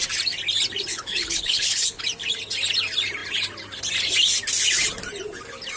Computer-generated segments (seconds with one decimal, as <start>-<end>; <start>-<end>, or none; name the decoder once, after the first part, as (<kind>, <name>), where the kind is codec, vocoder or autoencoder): 0.9-2.0 (codec, HILCodec)